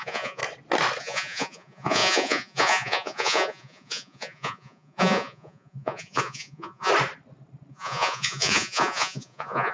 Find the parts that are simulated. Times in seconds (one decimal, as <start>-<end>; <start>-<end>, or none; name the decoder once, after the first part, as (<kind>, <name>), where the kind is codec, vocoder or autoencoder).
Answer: 0.0-0.4 (vocoder, Vocos); 1.0-6.9; 7.7-9.7